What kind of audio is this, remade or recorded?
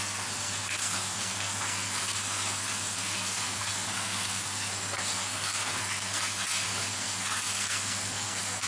remade